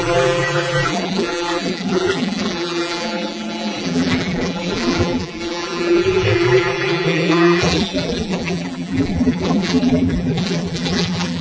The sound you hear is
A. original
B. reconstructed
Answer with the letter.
B